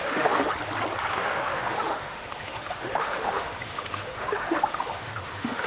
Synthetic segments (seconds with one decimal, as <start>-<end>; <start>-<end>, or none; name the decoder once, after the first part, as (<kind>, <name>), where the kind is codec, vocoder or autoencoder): 0.0-0.5 (autoencoder, DAC-VAE); 1.1-5.7